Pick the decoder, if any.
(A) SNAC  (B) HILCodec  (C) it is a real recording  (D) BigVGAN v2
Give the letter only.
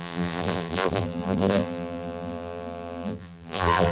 D